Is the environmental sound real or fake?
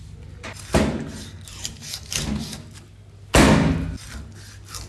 real